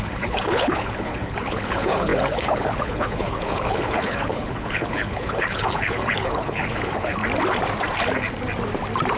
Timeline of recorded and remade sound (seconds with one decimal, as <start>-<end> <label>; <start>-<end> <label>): 0.0-7.2 remade; 7.2-9.2 recorded